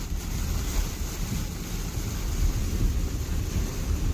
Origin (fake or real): fake